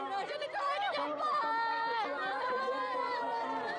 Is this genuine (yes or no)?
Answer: yes